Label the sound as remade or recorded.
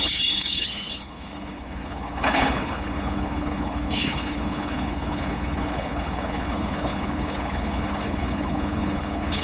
remade